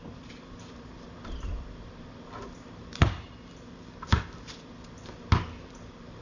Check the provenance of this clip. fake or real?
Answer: real